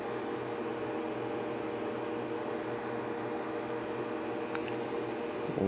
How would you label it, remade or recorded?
recorded